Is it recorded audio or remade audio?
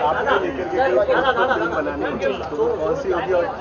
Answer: recorded